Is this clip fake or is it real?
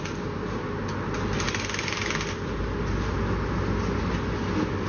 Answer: real